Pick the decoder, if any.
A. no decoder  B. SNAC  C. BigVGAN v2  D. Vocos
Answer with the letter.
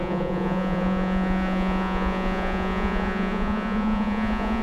D